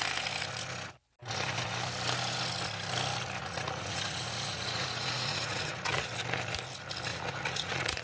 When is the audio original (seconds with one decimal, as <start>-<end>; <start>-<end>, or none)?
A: 0.0-3.4; 6.1-7.1